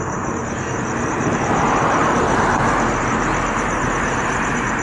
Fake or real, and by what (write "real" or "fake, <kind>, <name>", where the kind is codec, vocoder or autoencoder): fake, vocoder, BigVGAN v2